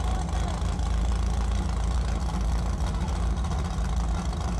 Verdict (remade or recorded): recorded